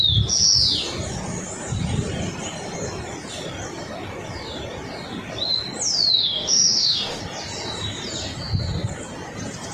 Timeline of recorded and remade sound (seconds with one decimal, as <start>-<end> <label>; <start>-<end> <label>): 0.0-6.2 recorded; 6.2-7.2 remade; 7.2-9.7 recorded